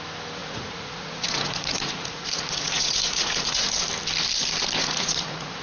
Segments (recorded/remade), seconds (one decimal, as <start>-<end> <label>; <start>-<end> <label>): 0.0-0.4 recorded; 0.4-3.8 remade; 3.8-4.8 recorded; 4.8-5.6 remade